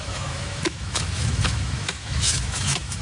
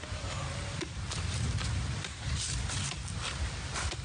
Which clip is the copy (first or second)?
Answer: first